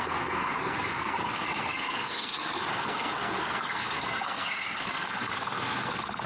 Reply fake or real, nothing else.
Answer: fake